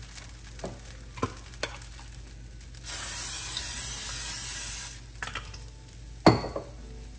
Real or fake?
real